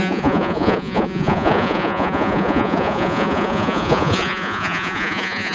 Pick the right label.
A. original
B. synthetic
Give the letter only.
B